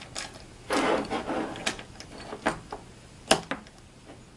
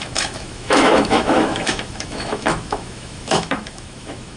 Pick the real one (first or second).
first